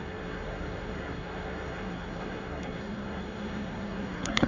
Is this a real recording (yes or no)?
no